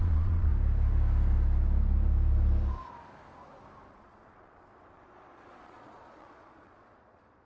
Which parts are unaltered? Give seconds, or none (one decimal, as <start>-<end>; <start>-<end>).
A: 0.5-3.9